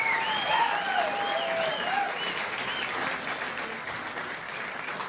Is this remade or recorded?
recorded